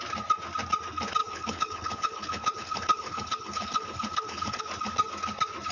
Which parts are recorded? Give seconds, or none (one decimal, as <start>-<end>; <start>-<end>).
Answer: 0.0-1.2; 4.6-5.7